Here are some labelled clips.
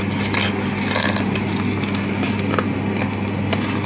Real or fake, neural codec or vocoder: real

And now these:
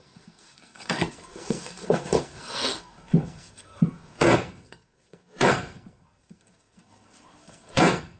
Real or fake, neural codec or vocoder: fake, codec, SNAC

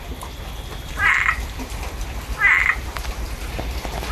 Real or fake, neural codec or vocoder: real